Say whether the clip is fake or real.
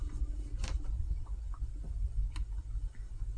real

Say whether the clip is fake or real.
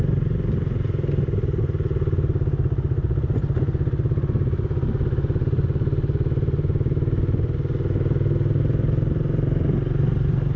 real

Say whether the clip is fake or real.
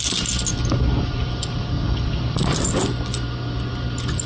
real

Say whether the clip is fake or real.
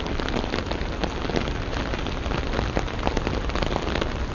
real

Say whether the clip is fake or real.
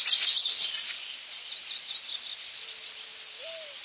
real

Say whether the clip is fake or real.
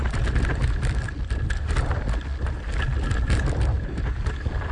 real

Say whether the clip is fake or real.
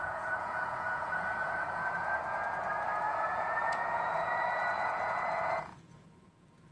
fake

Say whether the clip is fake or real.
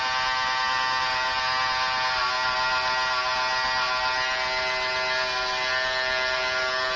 real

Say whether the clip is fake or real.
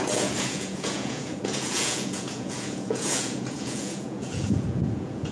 fake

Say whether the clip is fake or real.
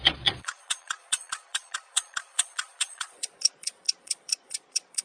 fake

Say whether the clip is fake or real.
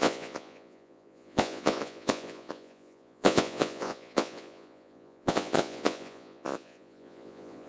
fake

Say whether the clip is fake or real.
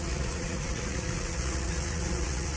fake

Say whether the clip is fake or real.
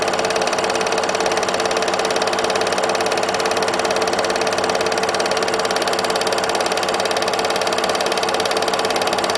real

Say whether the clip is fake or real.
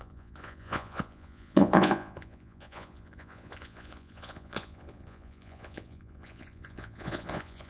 fake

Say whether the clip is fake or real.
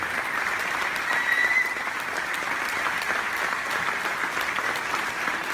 real